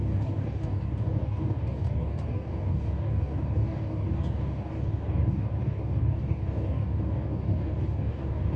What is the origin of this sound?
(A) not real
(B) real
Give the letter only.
A